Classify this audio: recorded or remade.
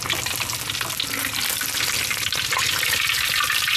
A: recorded